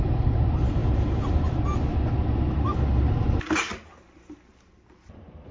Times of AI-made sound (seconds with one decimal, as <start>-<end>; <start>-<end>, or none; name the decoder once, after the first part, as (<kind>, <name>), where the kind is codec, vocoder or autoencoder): none